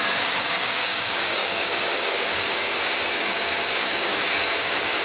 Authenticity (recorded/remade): remade